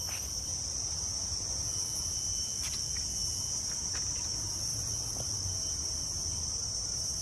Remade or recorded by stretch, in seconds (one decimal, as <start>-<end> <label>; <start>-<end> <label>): 0.0-2.3 recorded; 2.3-3.0 remade; 3.0-4.7 recorded; 4.7-5.5 remade; 5.5-7.2 recorded